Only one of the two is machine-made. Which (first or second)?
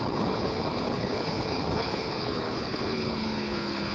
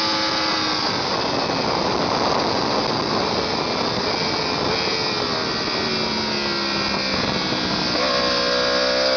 first